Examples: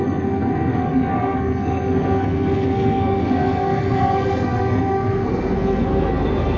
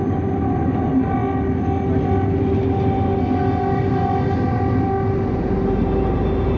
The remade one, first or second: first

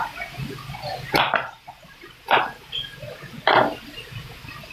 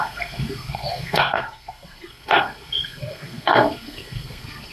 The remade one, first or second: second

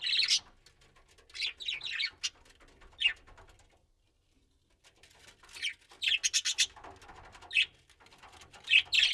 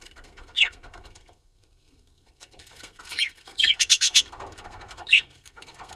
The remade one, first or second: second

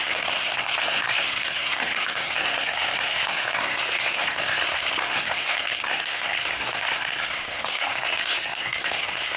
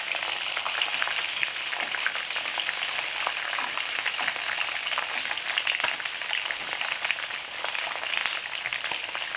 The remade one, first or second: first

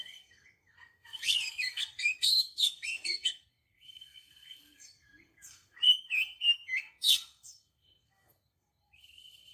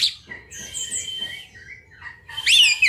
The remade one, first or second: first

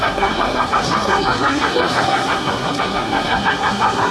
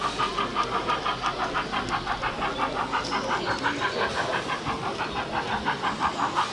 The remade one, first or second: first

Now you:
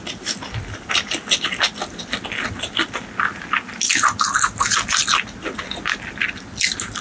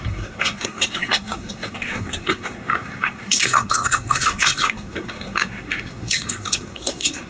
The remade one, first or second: second